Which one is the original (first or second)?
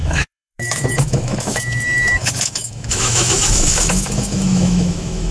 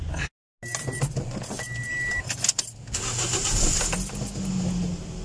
second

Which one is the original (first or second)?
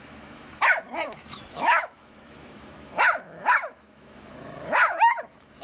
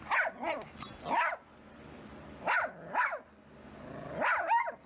second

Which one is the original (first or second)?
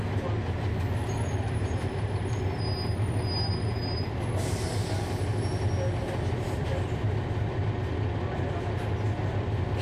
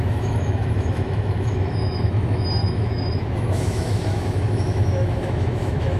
first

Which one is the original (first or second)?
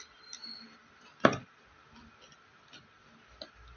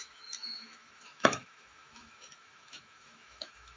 first